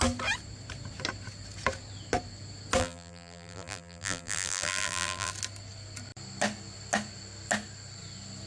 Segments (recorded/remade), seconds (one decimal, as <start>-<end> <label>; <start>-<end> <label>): 0.0-2.8 recorded; 2.8-5.3 remade; 5.3-8.5 recorded